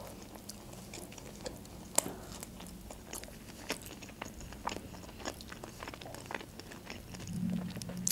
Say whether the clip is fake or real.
real